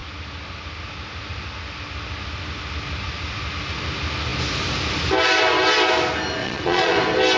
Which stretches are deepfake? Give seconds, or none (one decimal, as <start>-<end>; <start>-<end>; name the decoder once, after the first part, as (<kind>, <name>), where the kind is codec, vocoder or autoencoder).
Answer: 6.4-7.0 (vocoder, Vocos)